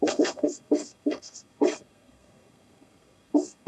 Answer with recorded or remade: remade